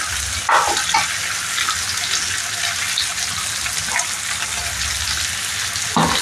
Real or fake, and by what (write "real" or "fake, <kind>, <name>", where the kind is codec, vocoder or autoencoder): real